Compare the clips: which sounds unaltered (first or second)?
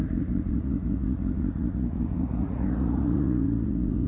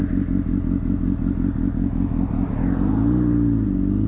second